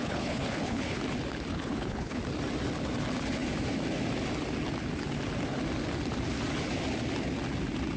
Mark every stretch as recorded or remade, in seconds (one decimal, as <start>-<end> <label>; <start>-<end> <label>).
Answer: 0.0-1.0 remade; 1.0-1.5 recorded; 1.5-2.2 remade; 2.2-8.0 recorded